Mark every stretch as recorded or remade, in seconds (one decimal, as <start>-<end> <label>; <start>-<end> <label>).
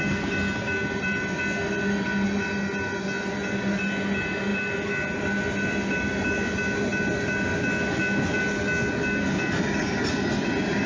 0.0-10.9 recorded